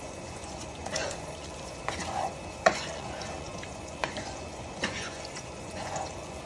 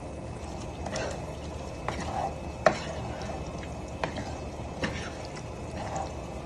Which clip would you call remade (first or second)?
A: first